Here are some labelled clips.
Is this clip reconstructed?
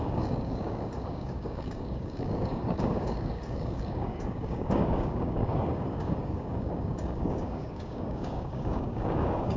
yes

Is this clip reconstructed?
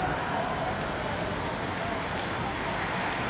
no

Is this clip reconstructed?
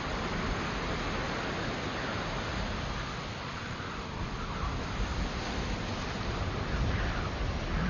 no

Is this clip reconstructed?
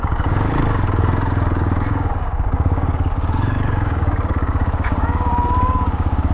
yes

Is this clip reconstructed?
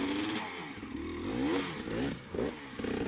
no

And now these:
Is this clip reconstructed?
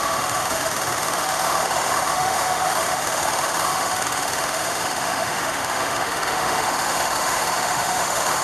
yes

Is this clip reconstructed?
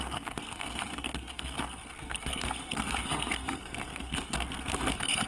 yes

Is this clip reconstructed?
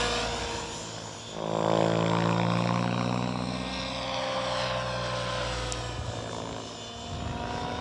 no